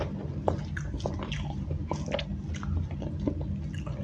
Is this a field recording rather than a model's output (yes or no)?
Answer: yes